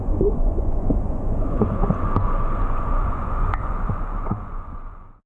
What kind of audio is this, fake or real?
fake